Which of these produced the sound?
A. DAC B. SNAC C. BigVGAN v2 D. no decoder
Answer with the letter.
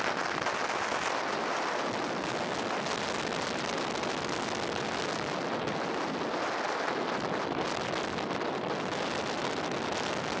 D